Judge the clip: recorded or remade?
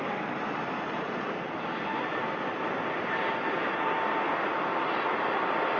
recorded